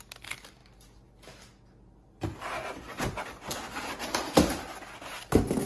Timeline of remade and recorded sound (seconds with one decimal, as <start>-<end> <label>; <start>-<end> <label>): 0.0-5.7 recorded